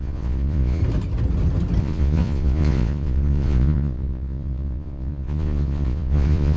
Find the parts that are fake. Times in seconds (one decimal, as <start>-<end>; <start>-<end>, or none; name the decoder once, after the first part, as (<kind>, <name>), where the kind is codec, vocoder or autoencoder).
0.0-0.8 (vocoder, Vocos); 1.8-6.6